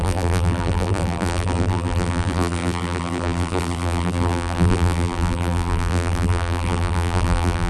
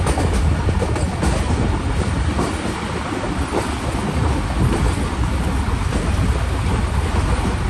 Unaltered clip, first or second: second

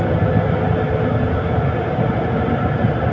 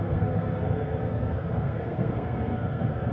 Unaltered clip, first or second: first